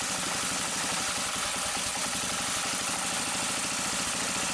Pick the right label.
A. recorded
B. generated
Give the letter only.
A